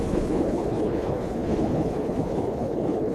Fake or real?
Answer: fake